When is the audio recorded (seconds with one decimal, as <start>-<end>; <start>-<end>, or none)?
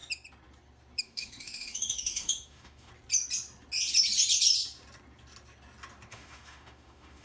0.0-1.0; 2.9-6.1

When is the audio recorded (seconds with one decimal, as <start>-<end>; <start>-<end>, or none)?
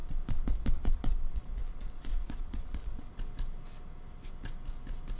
3.1-5.2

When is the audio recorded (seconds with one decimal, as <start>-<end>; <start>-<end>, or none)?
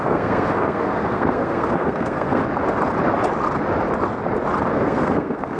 2.4-4.7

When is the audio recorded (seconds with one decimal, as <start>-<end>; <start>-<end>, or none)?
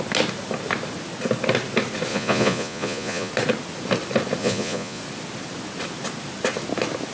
0.0-2.1; 3.3-4.4; 5.0-7.1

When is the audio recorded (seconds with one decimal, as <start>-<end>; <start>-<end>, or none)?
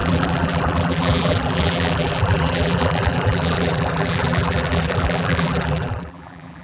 none